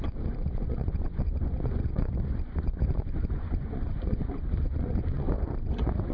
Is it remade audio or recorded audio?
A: remade